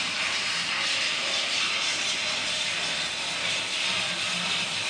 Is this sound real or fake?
fake